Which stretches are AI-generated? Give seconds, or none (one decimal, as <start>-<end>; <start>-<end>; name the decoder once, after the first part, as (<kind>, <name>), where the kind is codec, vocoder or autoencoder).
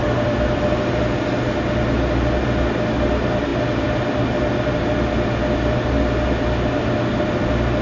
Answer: none